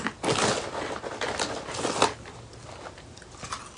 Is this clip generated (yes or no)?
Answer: no